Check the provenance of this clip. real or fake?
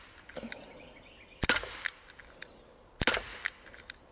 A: real